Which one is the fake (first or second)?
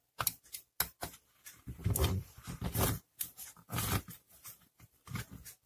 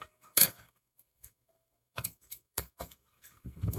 second